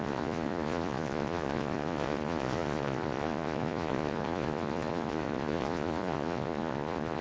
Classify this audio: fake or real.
fake